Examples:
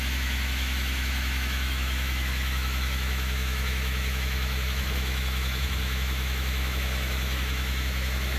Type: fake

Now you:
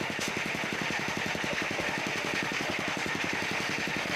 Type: fake